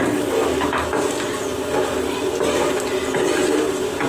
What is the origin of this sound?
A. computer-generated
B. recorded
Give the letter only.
B